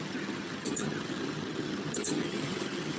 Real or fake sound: fake